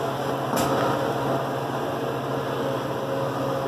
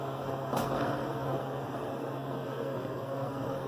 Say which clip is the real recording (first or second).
first